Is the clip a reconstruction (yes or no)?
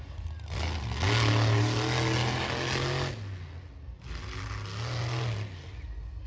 no